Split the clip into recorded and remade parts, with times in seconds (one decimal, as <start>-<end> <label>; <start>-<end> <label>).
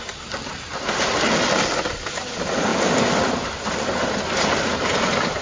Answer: 0.0-5.4 recorded